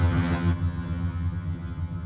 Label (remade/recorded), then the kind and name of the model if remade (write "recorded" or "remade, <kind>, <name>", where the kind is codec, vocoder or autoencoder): remade, vocoder, HiFi-GAN